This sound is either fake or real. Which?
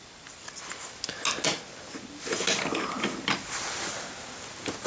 real